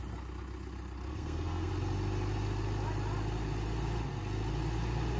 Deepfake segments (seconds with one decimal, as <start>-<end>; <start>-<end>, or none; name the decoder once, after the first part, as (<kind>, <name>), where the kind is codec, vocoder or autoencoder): 1.1-1.7 (codec, SNAC)